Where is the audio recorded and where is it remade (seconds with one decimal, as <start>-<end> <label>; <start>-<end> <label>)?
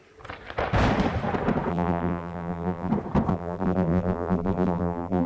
0.0-1.7 recorded; 1.7-2.9 remade; 2.9-3.3 recorded; 3.3-5.3 remade